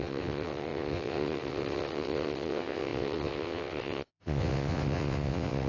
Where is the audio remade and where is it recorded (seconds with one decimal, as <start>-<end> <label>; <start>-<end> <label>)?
0.0-5.7 remade